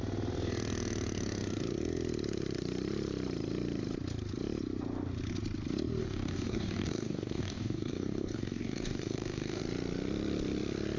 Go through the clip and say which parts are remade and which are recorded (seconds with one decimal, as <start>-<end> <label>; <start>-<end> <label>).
0.0-6.0 recorded; 6.0-9.6 remade; 9.6-11.0 recorded